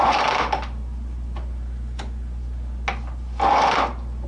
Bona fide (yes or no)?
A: yes